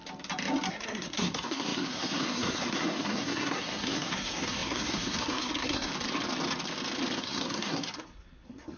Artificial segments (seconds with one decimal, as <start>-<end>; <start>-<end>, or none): 0.7-5.9; 7.2-8.8